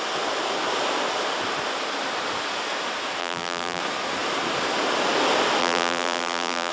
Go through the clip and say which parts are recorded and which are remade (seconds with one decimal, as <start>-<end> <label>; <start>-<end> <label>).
0.0-3.2 recorded; 3.2-3.8 remade; 3.8-5.6 recorded; 5.6-6.7 remade